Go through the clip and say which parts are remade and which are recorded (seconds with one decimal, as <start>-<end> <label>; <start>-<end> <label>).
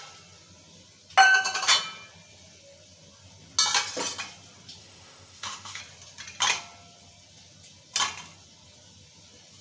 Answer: 0.0-4.8 recorded; 4.8-5.8 remade; 5.8-9.6 recorded